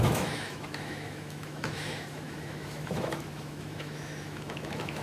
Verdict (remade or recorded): remade